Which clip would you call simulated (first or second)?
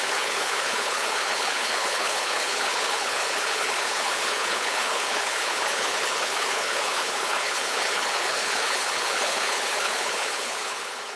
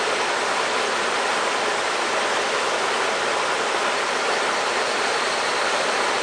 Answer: first